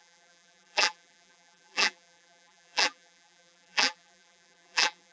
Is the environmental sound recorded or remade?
remade